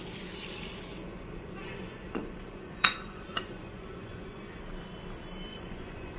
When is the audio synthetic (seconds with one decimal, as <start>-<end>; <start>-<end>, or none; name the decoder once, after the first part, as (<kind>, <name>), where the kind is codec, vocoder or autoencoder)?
0.9-4.6 (vocoder, Vocos); 5.5-6.2